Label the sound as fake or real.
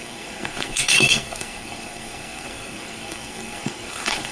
fake